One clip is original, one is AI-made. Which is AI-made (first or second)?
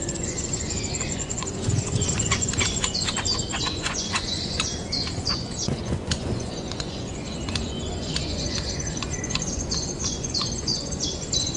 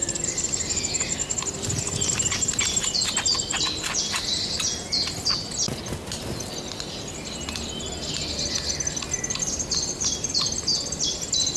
first